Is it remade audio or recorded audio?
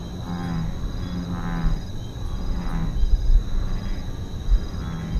recorded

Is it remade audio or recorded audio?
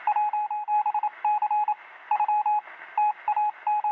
recorded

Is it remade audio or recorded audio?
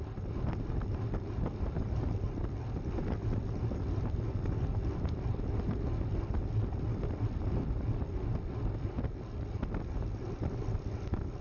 recorded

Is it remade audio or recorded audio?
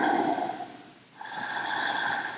recorded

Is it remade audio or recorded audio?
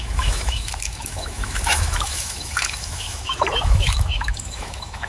remade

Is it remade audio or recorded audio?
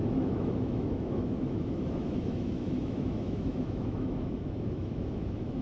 remade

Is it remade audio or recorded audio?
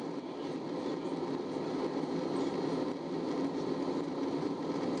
recorded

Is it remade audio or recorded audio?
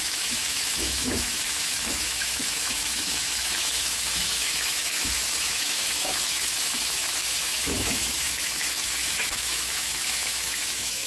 remade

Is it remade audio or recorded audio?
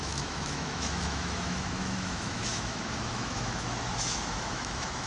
remade